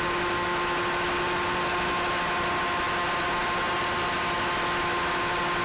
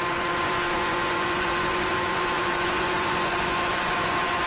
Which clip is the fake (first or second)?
second